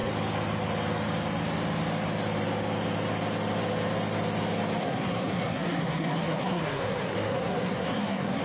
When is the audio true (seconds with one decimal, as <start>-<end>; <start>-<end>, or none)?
0.0-4.8